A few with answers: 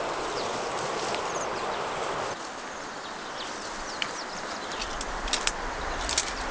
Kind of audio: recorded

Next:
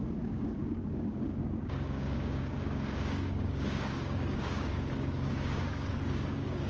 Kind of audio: remade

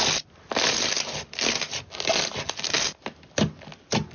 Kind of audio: recorded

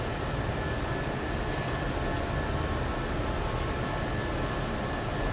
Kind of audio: recorded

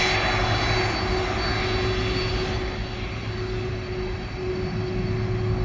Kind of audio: recorded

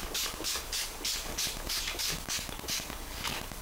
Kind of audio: remade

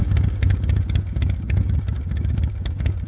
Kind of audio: remade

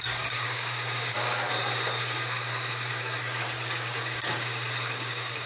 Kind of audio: remade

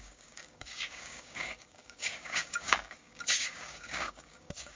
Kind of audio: remade